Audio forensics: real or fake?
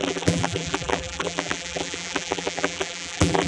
fake